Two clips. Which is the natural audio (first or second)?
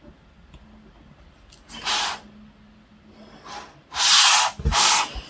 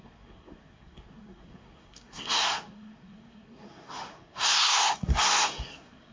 first